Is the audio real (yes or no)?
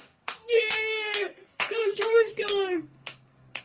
no